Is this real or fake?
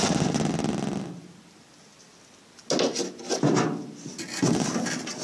real